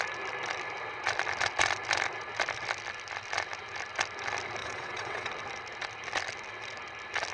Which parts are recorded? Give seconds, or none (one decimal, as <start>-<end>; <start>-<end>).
0.0-4.6; 5.3-7.3